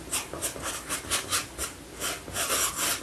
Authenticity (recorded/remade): recorded